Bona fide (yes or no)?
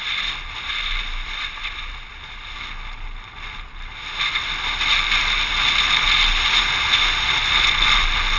yes